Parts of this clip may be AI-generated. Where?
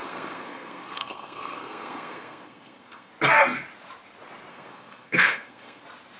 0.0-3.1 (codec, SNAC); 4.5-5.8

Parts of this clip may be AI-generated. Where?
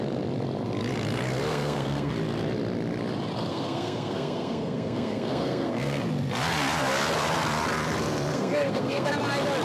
1.5-2.1 (codec, SNAC); 3.5-6.0; 8.3-9.1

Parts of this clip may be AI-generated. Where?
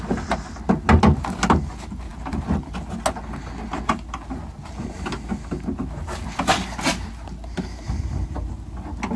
none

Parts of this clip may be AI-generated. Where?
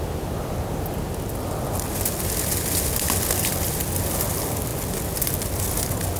none